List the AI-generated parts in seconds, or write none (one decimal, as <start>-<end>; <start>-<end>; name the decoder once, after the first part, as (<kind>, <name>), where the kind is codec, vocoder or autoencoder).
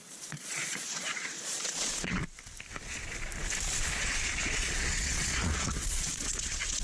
0.0-2.2 (vocoder, Vocos); 4.0-6.8